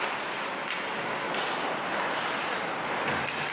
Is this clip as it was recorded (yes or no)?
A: yes